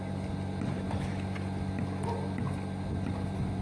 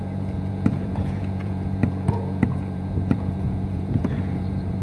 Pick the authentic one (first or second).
first